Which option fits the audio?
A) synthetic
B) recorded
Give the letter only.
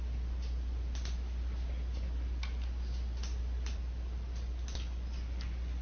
B